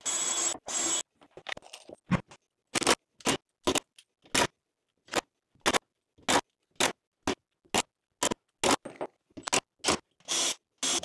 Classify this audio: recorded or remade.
recorded